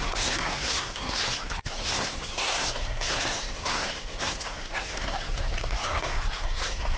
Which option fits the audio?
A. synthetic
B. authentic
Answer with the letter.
A